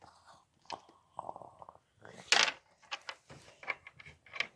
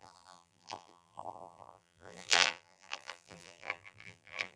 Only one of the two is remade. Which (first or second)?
second